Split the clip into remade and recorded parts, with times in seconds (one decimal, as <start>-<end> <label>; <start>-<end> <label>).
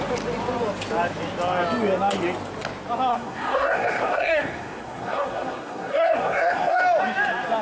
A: 0.0-3.1 recorded; 3.1-6.8 remade; 6.8-7.6 recorded